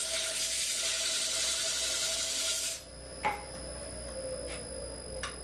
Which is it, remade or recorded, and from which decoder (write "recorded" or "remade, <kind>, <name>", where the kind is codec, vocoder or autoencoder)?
recorded